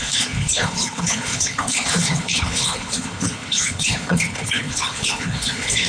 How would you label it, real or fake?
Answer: fake